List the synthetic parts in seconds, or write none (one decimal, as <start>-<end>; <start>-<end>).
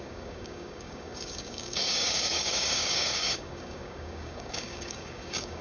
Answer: 0.0-5.6